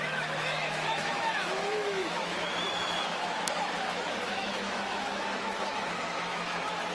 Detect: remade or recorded remade